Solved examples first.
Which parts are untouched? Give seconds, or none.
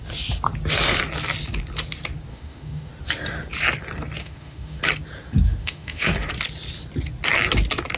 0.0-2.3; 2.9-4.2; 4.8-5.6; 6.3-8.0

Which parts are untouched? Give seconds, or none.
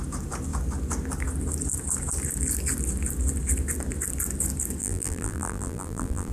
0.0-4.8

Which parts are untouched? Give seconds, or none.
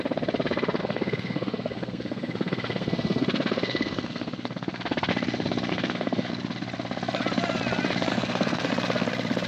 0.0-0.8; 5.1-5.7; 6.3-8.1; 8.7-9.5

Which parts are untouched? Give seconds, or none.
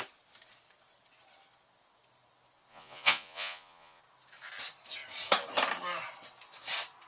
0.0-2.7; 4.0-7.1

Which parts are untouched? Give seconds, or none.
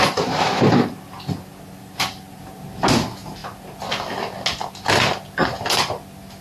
0.0-6.4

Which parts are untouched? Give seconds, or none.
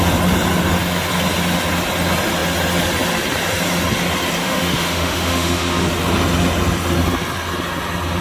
0.0-4.4; 5.9-8.2